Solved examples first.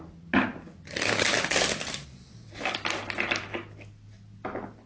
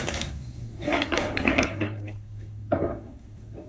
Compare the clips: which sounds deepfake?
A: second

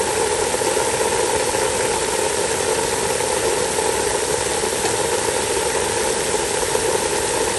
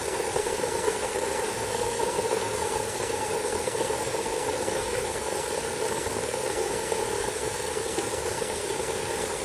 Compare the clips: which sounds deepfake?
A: second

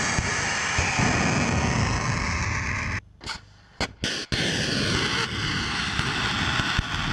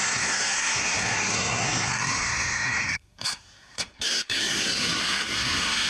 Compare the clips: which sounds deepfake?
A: second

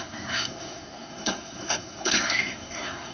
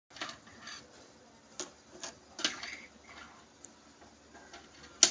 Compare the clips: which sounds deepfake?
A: first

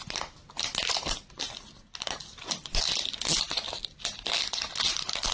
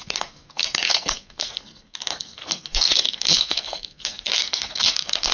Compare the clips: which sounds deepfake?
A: second